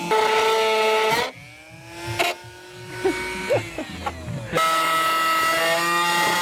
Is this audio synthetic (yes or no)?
no